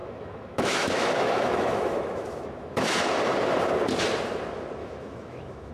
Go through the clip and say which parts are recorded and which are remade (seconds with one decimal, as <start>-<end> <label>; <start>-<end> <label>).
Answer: 0.0-3.0 remade; 3.0-4.8 recorded; 4.8-5.7 remade